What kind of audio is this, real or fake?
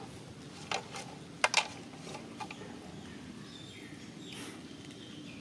real